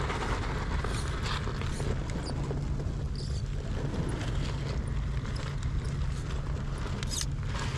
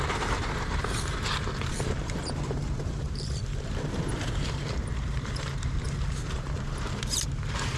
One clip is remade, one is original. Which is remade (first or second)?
second